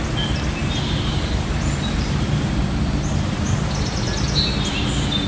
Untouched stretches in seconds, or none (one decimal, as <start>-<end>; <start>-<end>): 0.0-0.6; 2.6-5.3